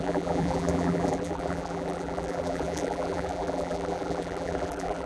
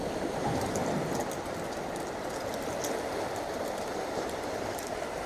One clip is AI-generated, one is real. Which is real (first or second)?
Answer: second